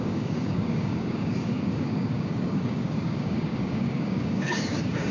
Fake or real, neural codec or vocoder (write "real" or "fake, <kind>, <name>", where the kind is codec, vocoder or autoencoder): fake, codec, DAC